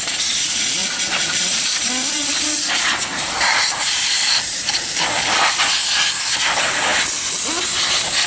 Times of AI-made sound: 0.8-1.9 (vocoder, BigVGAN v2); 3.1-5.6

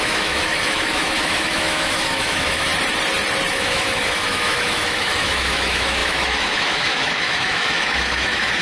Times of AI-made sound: 0.0-2.7 (autoencoder, DAC-VAE); 3.5-8.6

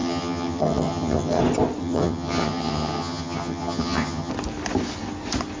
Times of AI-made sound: 0.0-1.4 (vocoder, HiFi-GAN); 1.8-4.3

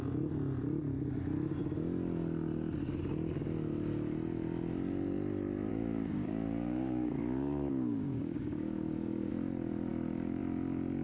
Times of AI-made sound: 5.7-9.3 (codec, DAC)

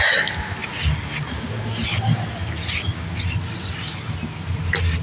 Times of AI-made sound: none

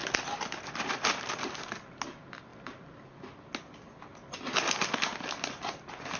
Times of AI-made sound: none

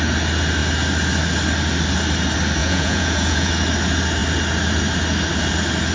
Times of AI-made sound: 2.6-3.5 (vocoder, Vocos)

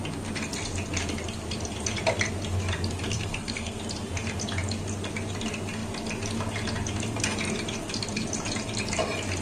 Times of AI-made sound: 3.1-3.8 (codec, SNAC)